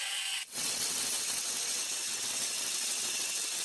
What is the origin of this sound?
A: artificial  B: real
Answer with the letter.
A